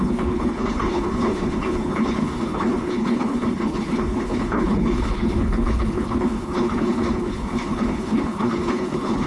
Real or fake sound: fake